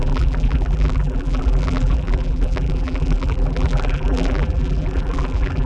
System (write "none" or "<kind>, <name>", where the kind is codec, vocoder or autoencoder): vocoder, BigVGAN v2